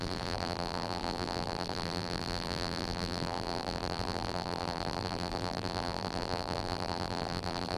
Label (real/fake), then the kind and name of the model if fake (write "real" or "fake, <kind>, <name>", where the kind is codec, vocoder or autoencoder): fake, vocoder, BigVGAN v2